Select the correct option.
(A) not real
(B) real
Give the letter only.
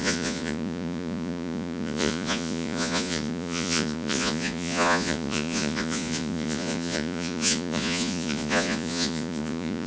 A